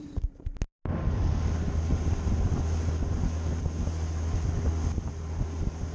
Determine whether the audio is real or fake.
real